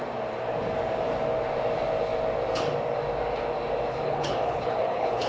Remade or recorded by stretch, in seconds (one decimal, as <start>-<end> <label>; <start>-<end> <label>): 0.0-3.9 recorded; 3.9-5.3 remade